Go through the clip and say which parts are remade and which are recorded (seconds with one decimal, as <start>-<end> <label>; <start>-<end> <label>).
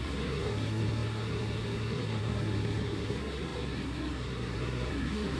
0.0-5.4 remade